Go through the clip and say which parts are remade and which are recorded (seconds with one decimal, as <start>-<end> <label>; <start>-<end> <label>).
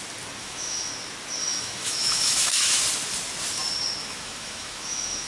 0.0-0.4 recorded; 0.4-0.9 remade; 0.9-1.4 recorded; 1.4-2.8 remade; 2.8-4.0 recorded; 4.0-5.3 remade